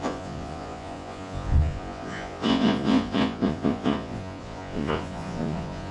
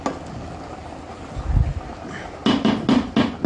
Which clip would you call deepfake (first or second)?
first